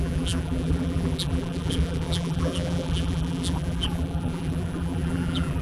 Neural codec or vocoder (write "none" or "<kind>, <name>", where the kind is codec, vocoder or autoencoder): vocoder, BigVGAN v2